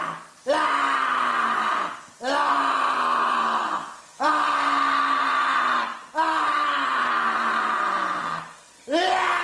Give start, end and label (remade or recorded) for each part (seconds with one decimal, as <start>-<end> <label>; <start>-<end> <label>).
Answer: 0.0-3.8 recorded; 3.8-4.3 remade; 4.3-9.4 recorded